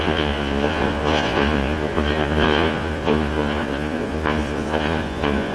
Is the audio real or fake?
fake